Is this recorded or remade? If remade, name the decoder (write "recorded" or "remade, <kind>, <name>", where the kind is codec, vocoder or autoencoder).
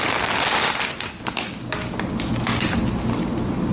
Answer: recorded